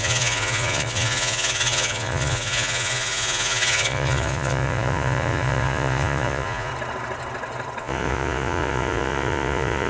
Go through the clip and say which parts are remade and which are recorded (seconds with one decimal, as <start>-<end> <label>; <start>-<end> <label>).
0.0-6.7 remade; 6.7-7.8 recorded; 7.8-9.9 remade